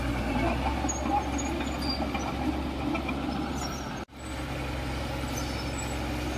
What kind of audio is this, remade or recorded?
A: recorded